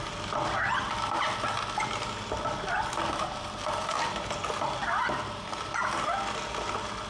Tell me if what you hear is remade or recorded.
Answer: recorded